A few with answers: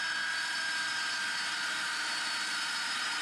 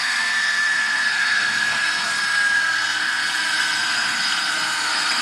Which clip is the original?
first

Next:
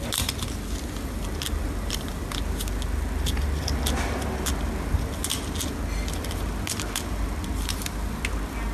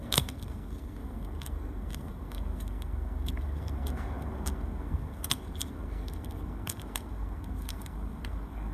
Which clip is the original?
first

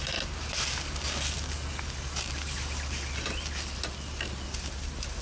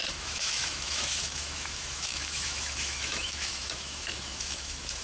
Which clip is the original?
first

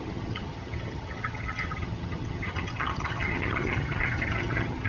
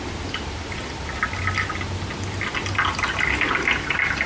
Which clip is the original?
second